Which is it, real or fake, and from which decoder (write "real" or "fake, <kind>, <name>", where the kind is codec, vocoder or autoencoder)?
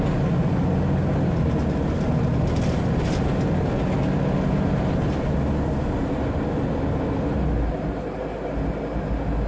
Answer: real